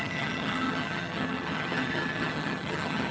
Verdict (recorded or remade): remade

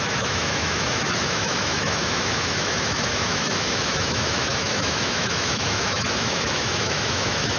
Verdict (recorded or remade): remade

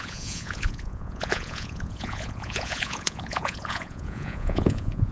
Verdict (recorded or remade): remade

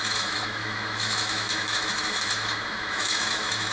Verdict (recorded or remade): remade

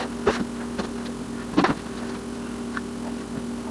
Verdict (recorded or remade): recorded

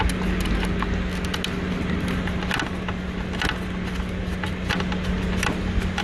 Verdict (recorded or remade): recorded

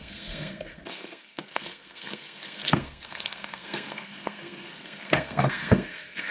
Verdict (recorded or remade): remade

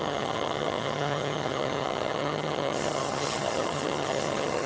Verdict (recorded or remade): remade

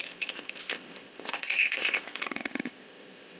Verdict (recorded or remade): remade